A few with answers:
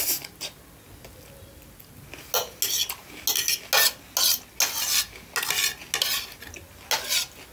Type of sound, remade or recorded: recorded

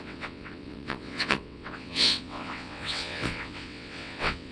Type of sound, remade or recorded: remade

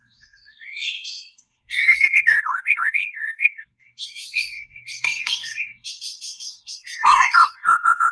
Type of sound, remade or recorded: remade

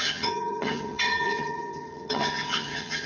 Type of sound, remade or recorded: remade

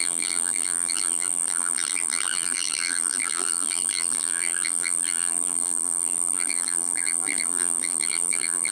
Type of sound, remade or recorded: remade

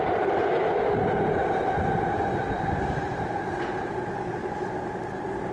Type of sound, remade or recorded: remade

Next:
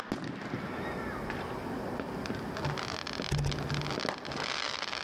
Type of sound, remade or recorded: recorded